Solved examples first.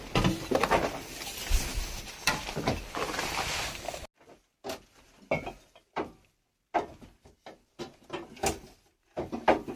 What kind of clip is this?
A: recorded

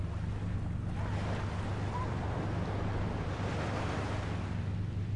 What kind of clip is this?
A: recorded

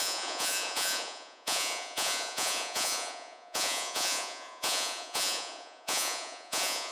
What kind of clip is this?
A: remade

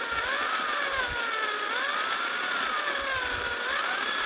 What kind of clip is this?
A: recorded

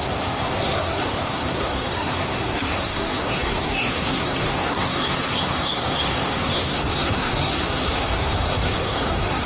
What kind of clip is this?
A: remade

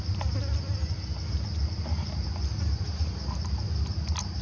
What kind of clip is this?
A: recorded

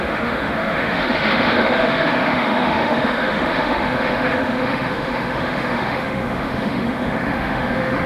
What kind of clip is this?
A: remade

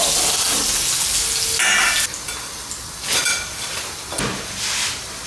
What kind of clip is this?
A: recorded